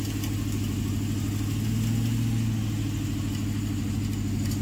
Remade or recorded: recorded